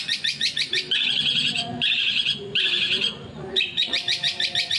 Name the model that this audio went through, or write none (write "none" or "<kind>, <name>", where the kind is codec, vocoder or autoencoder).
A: vocoder, Vocos